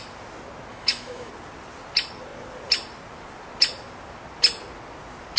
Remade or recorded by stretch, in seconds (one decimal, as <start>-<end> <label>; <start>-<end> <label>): 0.0-0.7 recorded; 0.7-1.3 remade; 1.3-5.4 recorded